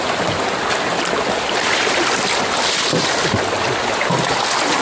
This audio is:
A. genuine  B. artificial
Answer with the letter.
A